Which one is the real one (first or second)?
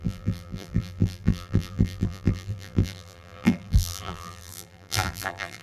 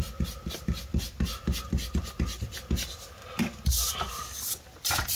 second